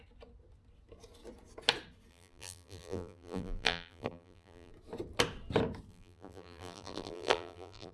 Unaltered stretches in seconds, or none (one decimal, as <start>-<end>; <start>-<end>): 0.0-2.1; 4.7-5.9